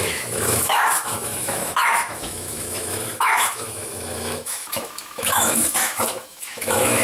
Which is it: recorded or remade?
remade